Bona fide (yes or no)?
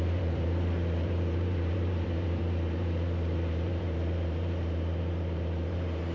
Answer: no